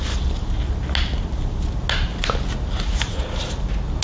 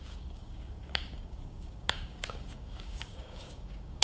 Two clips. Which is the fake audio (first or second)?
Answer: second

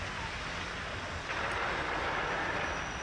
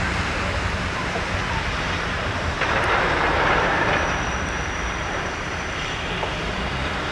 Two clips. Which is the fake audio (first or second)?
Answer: second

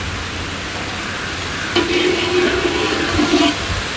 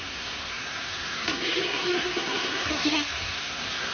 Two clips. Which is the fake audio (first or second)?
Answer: second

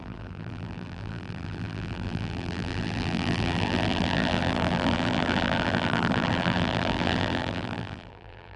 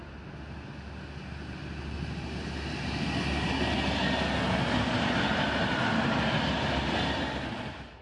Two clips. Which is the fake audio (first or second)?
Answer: first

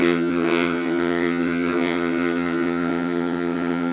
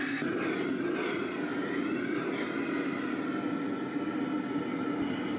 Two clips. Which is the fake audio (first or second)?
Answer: first